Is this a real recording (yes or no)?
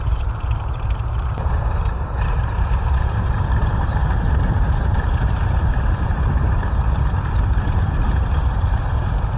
no